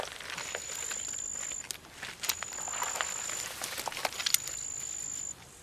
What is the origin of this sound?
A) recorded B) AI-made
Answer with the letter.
A